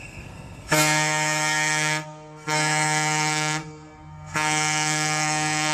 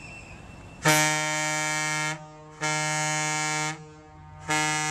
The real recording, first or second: second